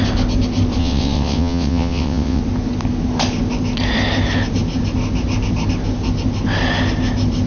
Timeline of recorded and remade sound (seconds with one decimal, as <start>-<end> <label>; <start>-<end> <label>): 0.0-0.8 recorded; 0.8-2.4 remade; 2.4-7.5 recorded